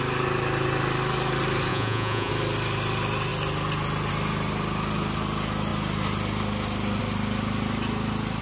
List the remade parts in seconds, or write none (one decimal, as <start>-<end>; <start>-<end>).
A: 1.7-2.3

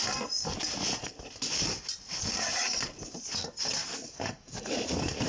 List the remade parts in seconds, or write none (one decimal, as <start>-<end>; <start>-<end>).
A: 3.9-5.3

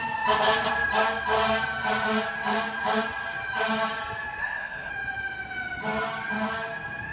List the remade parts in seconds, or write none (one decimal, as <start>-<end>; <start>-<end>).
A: 4.4-4.9

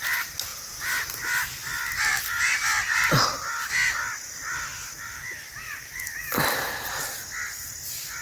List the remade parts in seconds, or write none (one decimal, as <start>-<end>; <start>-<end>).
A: 0.5-1.1

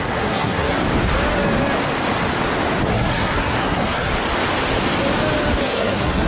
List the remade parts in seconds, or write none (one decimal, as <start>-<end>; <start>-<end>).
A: 0.0-0.8; 2.9-4.1; 5.6-6.3